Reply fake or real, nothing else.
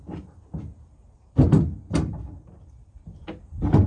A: fake